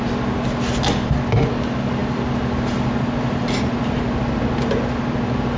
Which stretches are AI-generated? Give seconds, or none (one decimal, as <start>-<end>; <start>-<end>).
none